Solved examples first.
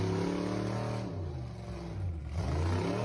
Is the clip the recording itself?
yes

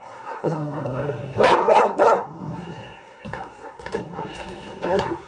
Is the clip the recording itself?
no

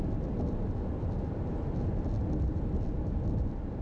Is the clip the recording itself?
yes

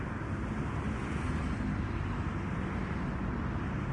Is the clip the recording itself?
yes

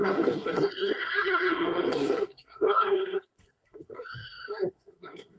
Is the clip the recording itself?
no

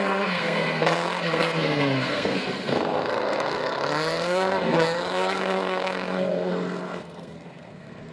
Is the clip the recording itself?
no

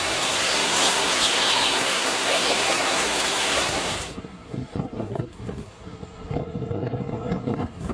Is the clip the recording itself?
no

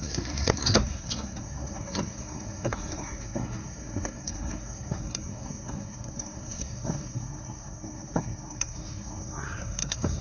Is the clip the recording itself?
no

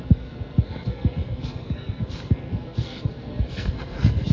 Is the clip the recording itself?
no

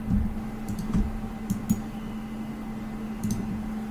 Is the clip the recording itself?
yes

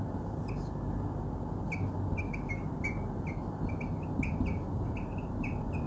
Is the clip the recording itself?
yes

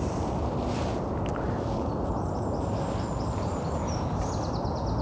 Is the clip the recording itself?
yes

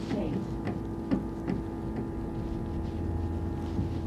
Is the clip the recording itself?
yes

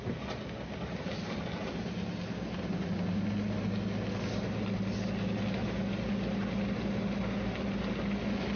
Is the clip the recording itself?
yes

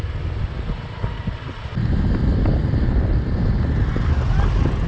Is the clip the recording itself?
yes